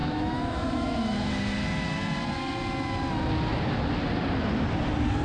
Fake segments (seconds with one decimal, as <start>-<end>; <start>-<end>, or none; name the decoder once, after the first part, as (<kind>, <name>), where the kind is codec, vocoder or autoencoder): 0.0-1.3 (autoencoder, DAC-VAE)